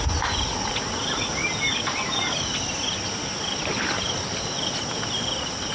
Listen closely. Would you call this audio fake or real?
real